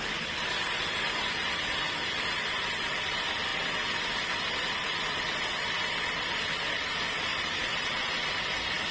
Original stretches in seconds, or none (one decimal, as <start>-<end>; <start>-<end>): 0.0-7.3; 8.1-8.9